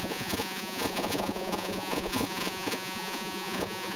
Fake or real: fake